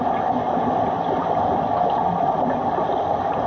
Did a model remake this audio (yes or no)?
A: no